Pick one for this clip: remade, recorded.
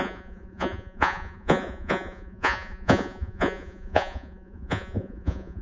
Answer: remade